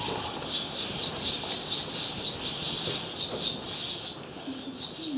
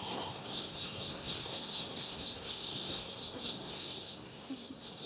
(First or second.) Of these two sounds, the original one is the first